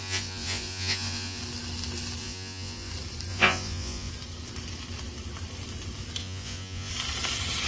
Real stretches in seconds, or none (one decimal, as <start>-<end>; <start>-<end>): 1.4-2.2; 2.9-3.3; 4.1-6.2; 6.9-7.7